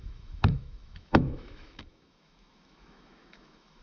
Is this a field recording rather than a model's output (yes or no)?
no